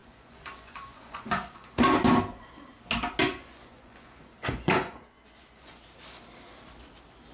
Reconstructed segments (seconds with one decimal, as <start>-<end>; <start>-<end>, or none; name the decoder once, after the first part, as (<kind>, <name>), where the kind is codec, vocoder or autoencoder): 0.0-1.7 (vocoder, Vocos); 3.2-5.8